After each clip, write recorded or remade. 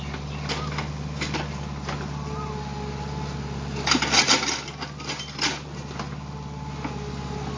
recorded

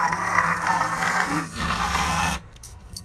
remade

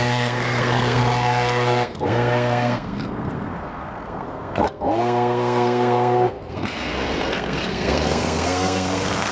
remade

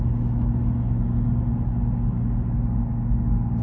recorded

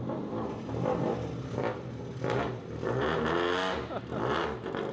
recorded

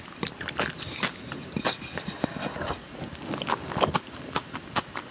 recorded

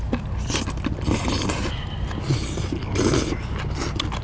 recorded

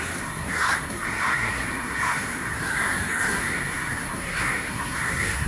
remade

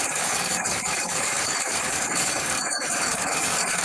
remade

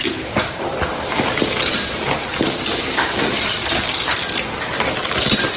recorded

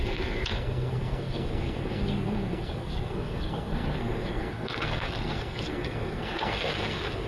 remade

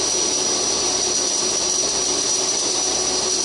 recorded